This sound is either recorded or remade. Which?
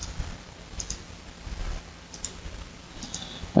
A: recorded